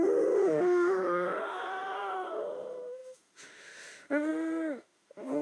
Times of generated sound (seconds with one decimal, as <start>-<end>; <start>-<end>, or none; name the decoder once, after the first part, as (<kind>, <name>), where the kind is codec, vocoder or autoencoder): 0.0-5.4 (autoencoder, DAC-VAE)